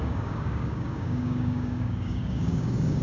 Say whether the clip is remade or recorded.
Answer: remade